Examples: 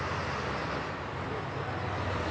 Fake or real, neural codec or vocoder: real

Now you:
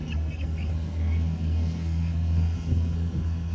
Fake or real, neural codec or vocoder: fake, codec, SNAC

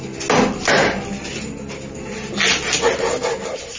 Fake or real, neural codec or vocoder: real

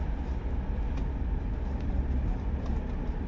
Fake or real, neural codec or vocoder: real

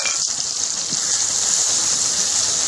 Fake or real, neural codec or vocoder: real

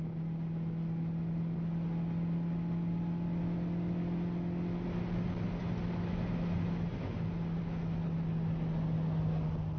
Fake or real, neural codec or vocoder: real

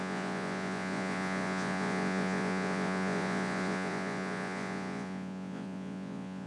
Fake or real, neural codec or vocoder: fake, vocoder, Vocos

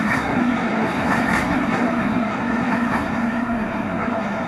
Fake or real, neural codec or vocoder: fake, codec, SNAC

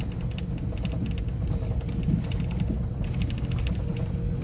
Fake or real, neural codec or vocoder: real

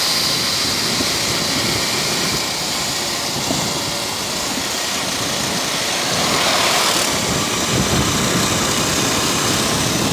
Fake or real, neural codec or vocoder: real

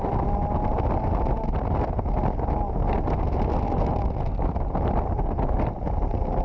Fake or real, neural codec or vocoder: real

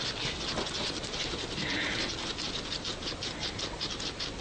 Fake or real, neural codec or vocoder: real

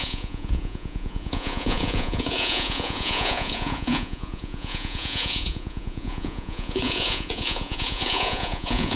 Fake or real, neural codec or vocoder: fake, vocoder, Vocos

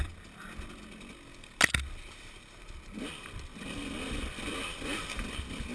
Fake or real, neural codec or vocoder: real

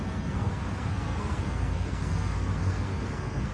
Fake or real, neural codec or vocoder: fake, codec, SNAC